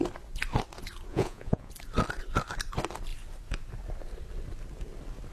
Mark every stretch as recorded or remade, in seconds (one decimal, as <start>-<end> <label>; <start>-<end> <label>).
0.0-1.1 recorded; 1.1-1.7 remade; 1.7-5.3 recorded